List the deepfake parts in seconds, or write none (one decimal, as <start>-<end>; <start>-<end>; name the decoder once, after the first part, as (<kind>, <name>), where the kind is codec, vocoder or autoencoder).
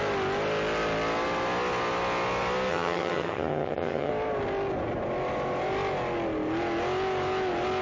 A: 2.7-4.1 (vocoder, HiFi-GAN)